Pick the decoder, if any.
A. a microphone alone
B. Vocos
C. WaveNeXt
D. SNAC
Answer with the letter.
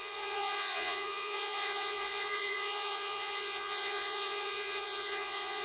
B